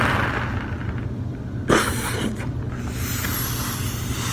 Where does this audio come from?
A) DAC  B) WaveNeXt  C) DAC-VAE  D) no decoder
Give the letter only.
D